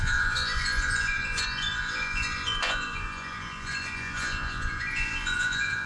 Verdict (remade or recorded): remade